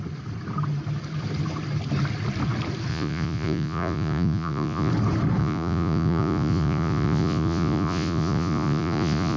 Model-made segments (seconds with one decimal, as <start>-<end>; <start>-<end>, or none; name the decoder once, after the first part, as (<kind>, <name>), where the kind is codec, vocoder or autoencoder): 2.9-4.9 (vocoder, Vocos); 5.4-9.4

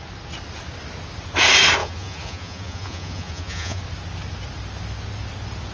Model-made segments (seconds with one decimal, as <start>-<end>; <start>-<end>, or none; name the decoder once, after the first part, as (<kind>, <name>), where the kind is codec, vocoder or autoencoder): 1.8-3.8 (vocoder, Vocos)